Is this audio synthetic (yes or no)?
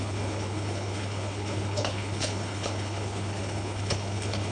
yes